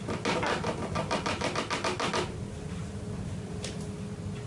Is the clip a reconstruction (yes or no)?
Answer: no